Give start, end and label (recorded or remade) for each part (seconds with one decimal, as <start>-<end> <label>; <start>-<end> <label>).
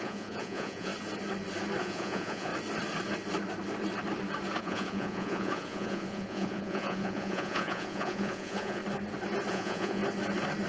0.0-0.9 remade; 0.9-1.8 recorded; 1.8-2.5 remade; 2.5-4.6 recorded; 4.6-8.8 remade; 8.8-9.5 recorded; 9.5-10.0 remade; 10.0-10.7 recorded